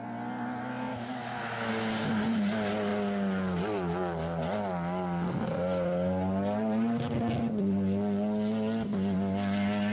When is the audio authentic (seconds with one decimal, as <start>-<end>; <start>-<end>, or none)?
0.0-0.9; 1.7-9.9